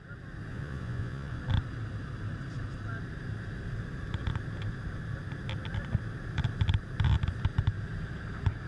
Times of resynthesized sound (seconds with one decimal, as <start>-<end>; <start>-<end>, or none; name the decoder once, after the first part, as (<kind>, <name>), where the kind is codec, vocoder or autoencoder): 0.5-1.4 (vocoder, Vocos)